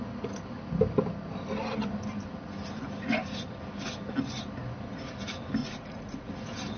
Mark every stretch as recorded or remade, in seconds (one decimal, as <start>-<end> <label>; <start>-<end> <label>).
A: 0.0-5.6 recorded; 5.6-6.3 remade; 6.3-6.8 recorded